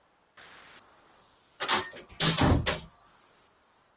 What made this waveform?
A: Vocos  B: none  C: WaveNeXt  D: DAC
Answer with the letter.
B